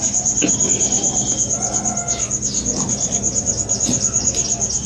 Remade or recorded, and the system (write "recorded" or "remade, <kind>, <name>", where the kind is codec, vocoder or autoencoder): recorded